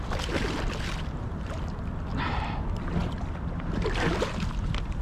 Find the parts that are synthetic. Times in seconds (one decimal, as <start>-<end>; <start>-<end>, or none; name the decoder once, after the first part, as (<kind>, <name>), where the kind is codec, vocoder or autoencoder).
none